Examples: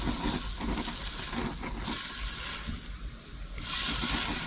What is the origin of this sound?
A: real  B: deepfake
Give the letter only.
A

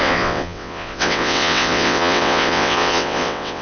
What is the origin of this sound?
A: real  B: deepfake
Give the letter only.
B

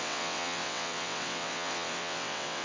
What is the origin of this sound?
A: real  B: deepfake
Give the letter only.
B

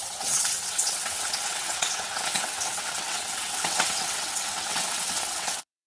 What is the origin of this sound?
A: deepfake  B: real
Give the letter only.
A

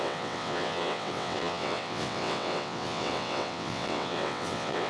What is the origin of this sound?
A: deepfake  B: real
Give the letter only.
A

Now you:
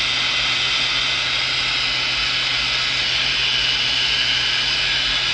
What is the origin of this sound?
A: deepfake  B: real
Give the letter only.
B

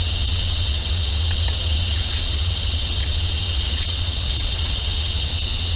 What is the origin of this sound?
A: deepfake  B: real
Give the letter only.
A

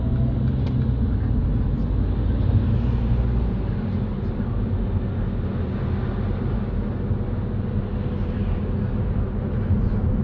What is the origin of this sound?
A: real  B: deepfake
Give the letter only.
A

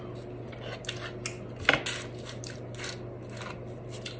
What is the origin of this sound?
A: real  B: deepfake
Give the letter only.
A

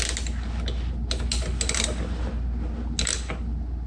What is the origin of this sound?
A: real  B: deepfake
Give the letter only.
A